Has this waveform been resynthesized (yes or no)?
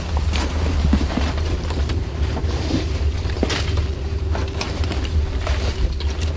yes